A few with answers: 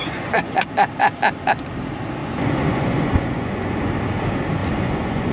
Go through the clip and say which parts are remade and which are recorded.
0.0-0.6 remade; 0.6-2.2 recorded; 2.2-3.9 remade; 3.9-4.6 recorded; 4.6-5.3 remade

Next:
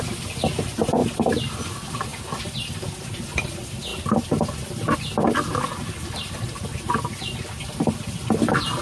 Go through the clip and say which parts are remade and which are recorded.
0.0-8.8 recorded

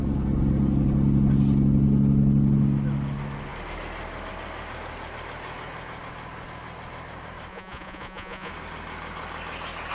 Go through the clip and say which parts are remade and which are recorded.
0.0-7.5 recorded; 7.5-8.5 remade; 8.5-9.9 recorded